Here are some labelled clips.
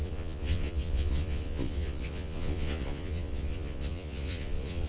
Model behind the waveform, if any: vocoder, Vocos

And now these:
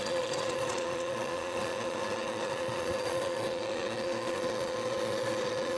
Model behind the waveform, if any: vocoder, Vocos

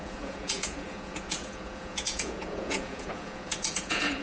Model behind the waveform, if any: vocoder, Vocos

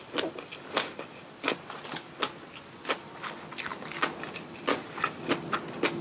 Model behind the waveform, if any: none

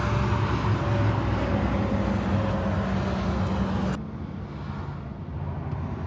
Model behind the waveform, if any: none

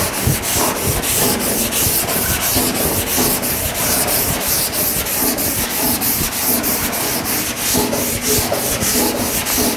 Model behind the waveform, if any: none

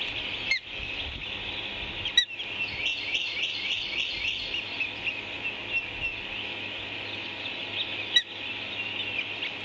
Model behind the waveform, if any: none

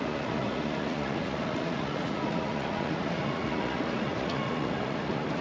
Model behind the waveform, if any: vocoder, Vocos